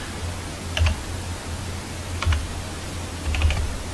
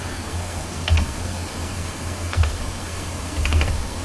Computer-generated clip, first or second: second